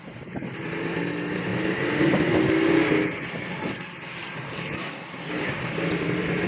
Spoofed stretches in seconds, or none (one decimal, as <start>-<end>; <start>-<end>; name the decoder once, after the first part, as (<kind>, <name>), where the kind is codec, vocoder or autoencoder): none